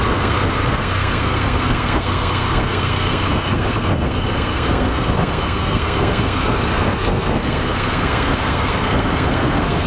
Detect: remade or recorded remade